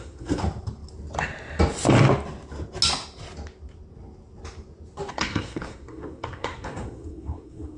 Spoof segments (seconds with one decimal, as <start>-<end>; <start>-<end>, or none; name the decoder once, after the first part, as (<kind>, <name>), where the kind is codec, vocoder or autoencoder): 0.0-0.4 (codec, SNAC); 5.1-7.8